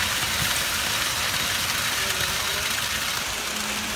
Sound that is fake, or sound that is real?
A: real